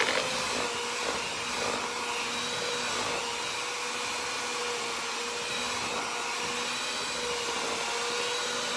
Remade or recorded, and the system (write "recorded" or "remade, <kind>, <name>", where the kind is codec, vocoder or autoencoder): recorded